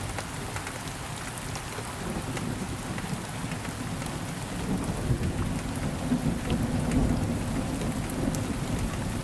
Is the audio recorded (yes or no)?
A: yes